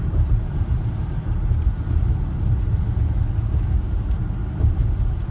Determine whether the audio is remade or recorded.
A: recorded